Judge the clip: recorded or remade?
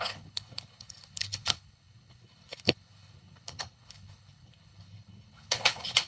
remade